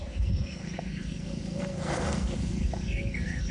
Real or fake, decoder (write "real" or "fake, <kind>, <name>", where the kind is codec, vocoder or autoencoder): fake, codec, SNAC